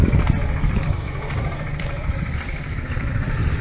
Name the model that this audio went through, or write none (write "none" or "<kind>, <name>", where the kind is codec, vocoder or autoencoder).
vocoder, BigVGAN v2